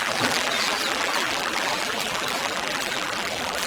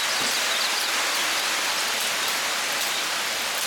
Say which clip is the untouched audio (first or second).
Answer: second